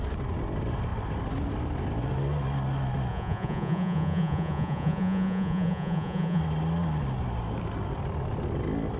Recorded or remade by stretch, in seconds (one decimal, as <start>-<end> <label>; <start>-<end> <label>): 0.0-3.1 recorded; 3.1-6.4 remade; 6.4-9.0 recorded